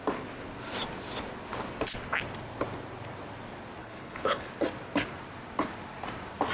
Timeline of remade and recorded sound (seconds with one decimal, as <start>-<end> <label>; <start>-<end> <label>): 0.0-3.8 recorded; 3.8-4.5 remade; 4.5-6.5 recorded